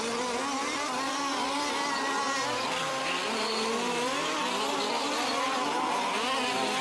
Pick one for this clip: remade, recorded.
recorded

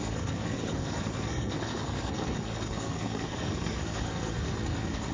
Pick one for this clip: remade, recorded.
remade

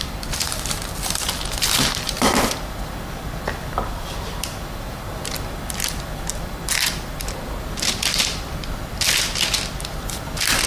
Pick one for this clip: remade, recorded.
remade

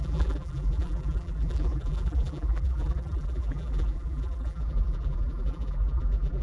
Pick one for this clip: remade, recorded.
remade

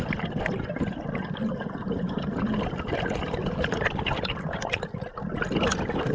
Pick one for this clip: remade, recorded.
remade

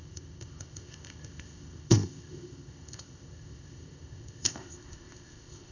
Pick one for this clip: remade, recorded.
remade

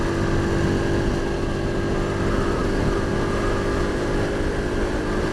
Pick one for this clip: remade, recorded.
recorded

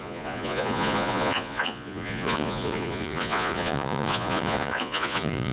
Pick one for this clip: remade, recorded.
remade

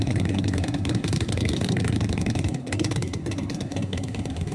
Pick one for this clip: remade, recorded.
remade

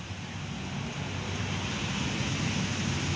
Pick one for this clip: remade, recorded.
recorded